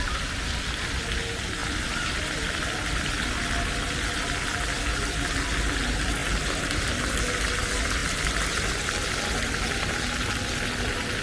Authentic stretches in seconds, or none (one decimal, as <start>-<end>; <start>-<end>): 0.0-6.2; 6.9-11.2